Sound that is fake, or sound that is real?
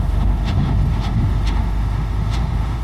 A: fake